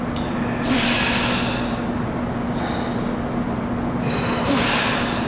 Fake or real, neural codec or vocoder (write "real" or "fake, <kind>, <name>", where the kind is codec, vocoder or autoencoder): real